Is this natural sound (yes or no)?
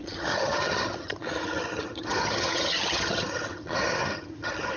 no